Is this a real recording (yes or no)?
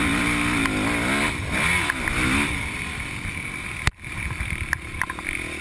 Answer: yes